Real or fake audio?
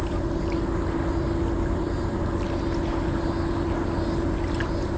real